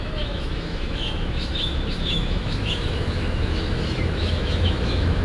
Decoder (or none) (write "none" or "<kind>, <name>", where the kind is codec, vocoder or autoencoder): autoencoder, DAC-VAE